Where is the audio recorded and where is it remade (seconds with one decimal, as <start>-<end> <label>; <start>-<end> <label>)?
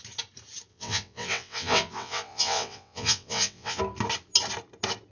0.0-0.7 recorded; 0.7-3.8 remade; 3.8-5.1 recorded